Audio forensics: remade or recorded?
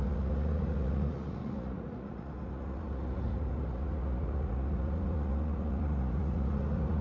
remade